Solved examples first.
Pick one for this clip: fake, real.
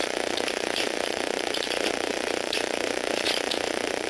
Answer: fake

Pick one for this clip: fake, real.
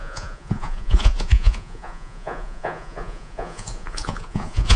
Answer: fake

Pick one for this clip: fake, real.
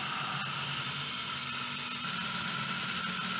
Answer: real